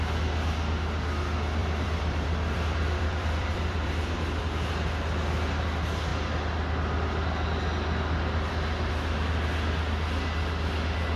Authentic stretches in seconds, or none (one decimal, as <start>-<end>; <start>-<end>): 0.0-1.6; 4.4-11.2